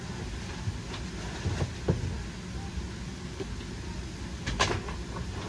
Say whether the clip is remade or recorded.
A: recorded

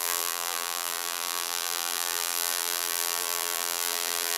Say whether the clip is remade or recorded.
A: remade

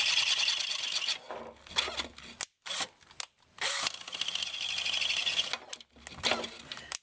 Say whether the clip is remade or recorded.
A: recorded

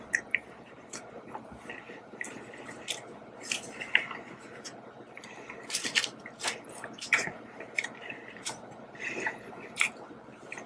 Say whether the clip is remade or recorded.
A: remade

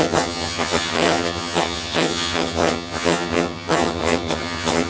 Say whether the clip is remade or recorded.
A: remade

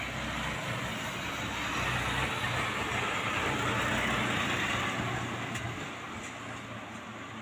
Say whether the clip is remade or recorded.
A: recorded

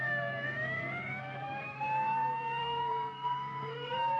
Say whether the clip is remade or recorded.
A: remade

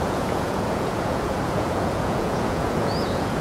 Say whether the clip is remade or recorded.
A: remade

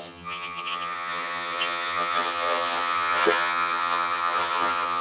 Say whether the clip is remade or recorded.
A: remade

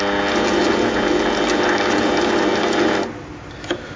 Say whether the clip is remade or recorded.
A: recorded